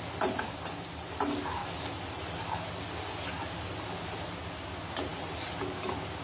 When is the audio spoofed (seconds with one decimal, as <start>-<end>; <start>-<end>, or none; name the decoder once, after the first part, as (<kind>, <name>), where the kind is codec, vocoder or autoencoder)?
none